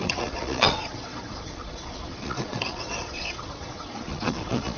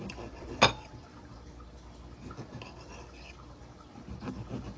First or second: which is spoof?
first